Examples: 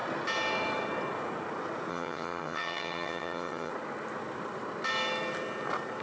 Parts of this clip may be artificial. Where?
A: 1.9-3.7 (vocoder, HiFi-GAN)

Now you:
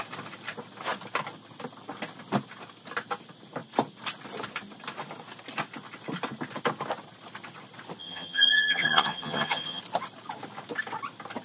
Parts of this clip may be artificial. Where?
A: 8.0-9.8 (vocoder, HiFi-GAN)

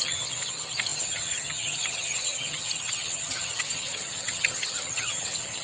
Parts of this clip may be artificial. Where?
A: 0.0-5.6 (vocoder, HiFi-GAN)

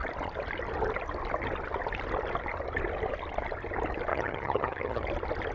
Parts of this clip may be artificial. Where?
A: 4.1-5.0 (vocoder, HiFi-GAN)